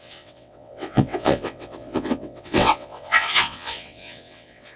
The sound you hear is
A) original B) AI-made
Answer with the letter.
B